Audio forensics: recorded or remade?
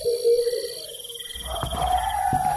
recorded